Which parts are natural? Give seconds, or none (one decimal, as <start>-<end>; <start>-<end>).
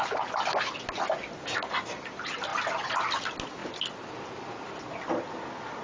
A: 0.0-5.8